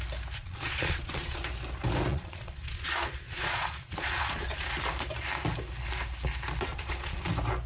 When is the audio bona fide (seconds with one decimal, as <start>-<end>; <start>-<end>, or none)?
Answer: 0.0-0.4; 1.4-2.1; 4.7-6.7; 7.3-7.7